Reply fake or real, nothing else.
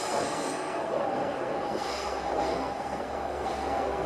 fake